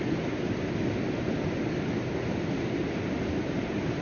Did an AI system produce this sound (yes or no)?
no